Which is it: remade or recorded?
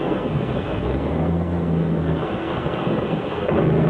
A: remade